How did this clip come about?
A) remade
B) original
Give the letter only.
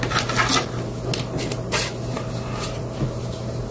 B